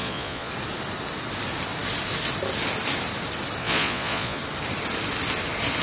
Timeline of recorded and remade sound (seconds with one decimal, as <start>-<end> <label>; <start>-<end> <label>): 0.0-0.5 remade; 0.5-3.6 recorded; 3.6-4.4 remade; 4.4-5.8 recorded